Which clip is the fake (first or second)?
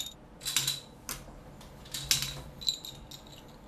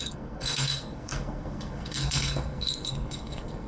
second